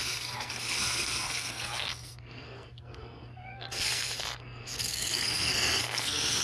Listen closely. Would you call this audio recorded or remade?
remade